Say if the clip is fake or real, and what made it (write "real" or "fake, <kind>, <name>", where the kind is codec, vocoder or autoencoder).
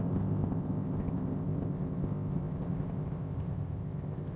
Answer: fake, codec, ZipCodec